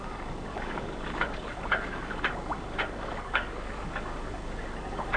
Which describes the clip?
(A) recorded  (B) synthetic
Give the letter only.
B